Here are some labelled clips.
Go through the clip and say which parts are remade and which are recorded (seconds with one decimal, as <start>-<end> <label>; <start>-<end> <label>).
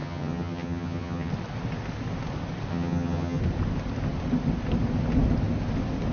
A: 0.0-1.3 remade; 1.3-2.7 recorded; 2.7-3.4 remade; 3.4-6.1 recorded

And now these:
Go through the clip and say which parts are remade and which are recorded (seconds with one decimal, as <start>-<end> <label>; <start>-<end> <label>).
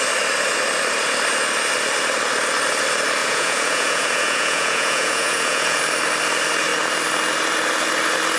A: 0.0-3.2 recorded; 3.2-5.8 remade; 5.8-8.4 recorded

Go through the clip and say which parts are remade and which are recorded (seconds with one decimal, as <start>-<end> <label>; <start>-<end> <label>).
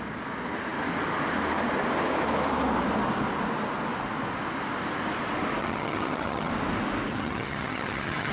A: 0.0-5.6 recorded; 5.6-6.5 remade; 6.5-7.1 recorded; 7.1-8.3 remade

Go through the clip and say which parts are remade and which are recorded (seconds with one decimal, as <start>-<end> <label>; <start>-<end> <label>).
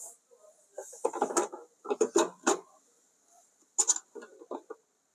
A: 0.0-5.1 recorded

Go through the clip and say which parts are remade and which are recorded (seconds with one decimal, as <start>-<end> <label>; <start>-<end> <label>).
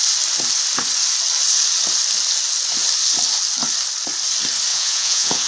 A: 0.0-4.7 recorded; 4.7-5.5 remade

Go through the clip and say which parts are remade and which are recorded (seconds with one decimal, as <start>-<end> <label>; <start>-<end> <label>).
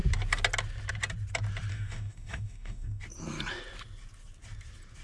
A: 0.0-1.7 recorded; 1.7-3.0 remade; 3.0-5.0 recorded